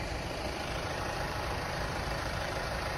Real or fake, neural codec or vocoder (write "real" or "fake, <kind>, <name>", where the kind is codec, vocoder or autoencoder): fake, vocoder, BigVGAN v2